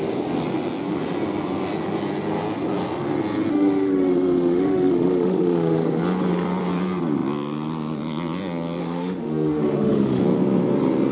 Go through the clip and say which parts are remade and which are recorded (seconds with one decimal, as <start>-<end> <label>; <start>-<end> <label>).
0.0-3.5 recorded; 3.5-5.9 remade; 5.9-8.8 recorded; 8.8-10.2 remade; 10.2-11.1 recorded